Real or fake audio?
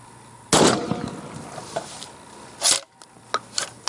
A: real